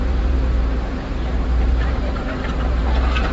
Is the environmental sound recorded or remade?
remade